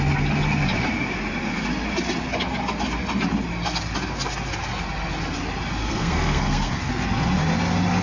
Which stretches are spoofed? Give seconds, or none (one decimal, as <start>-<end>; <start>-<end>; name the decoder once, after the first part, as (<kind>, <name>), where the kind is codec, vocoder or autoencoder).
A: 5.8-6.9 (codec, SNAC)